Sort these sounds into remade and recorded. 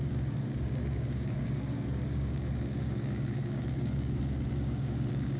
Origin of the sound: remade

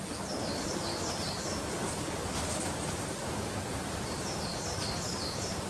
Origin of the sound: recorded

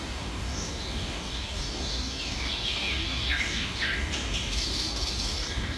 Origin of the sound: remade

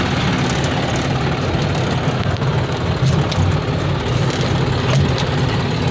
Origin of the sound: recorded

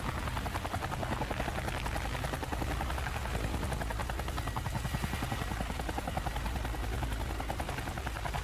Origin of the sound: recorded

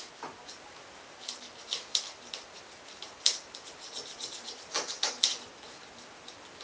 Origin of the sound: recorded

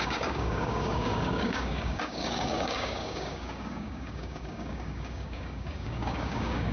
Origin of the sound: remade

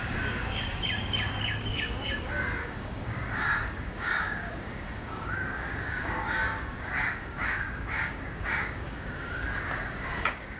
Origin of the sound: remade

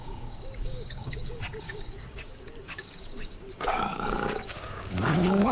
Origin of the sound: remade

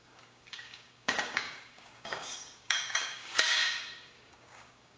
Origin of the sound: remade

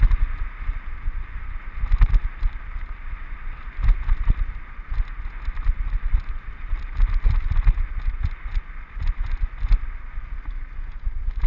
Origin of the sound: recorded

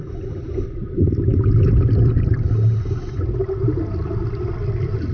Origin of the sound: recorded